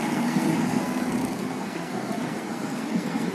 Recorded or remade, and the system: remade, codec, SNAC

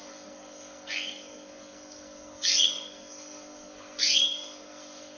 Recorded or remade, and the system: remade, codec, SNAC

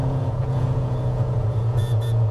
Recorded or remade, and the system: remade, vocoder, Vocos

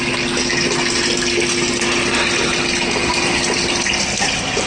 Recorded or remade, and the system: recorded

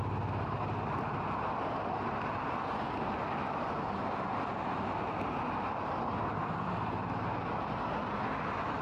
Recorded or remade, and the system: recorded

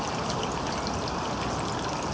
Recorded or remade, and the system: recorded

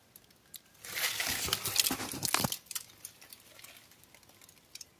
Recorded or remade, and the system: recorded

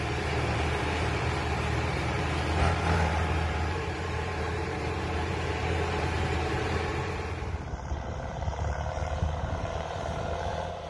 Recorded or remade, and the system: remade, vocoder, BigVGAN v2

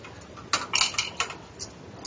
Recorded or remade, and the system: recorded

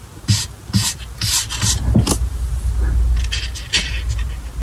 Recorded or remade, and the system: recorded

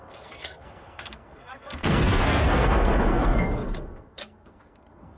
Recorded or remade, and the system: remade, codec, SNAC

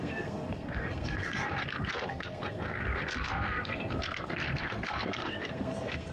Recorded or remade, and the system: remade, codec, SNAC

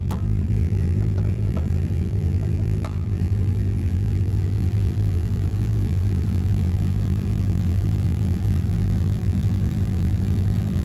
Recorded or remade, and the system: remade, vocoder, BigVGAN v2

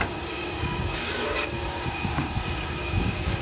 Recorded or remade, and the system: remade, codec, DAC